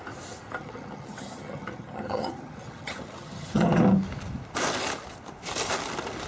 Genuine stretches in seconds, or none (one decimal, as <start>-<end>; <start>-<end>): 0.0-0.6; 3.8-6.3